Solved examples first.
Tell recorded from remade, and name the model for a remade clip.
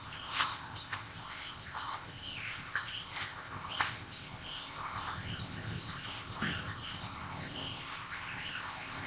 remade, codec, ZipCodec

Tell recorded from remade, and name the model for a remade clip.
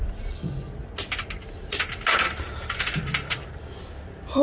recorded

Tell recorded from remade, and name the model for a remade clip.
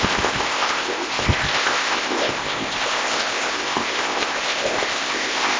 remade, codec, ZipCodec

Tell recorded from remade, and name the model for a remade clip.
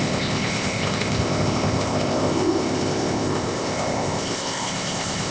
remade, codec, ZipCodec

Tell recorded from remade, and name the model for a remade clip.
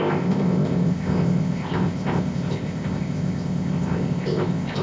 remade, codec, ZipCodec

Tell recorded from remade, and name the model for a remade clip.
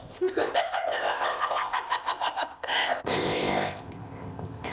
remade, codec, ZipCodec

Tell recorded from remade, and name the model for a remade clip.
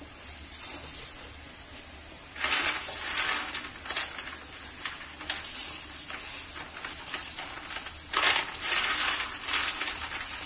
recorded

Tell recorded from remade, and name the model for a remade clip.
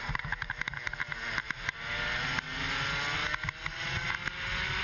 recorded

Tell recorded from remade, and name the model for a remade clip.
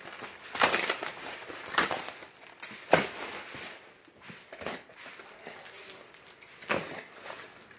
recorded